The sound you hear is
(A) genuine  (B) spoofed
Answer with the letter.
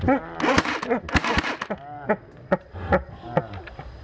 A